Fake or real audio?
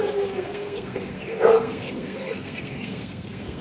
fake